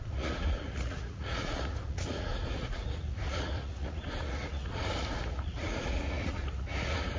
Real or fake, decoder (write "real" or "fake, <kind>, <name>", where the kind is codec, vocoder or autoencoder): fake, vocoder, Vocos